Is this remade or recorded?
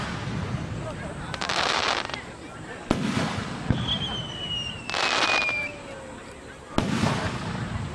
recorded